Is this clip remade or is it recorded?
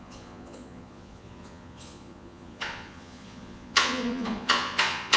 remade